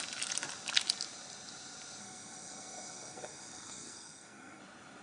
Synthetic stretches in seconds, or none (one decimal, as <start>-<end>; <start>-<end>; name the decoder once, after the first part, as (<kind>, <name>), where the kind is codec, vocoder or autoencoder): 2.0-4.6 (codec, SNAC)

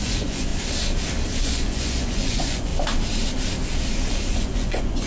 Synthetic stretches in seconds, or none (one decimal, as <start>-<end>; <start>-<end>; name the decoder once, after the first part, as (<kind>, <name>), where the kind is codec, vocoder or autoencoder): 0.0-0.5 (vocoder, Vocos); 1.4-2.7; 4.1-5.1

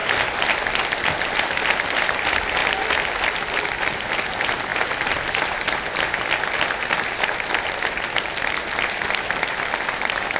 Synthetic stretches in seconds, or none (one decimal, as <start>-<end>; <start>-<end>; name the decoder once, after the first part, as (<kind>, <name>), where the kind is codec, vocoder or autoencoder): none

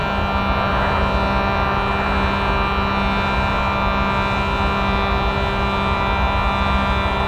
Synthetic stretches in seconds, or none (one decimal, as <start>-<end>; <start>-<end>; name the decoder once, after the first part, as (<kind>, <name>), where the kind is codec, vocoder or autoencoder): none

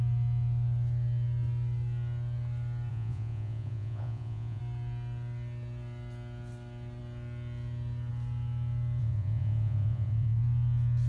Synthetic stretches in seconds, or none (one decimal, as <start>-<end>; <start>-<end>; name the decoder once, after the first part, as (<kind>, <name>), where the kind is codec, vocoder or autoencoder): 2.9-4.6 (vocoder, Vocos); 9.0-10.4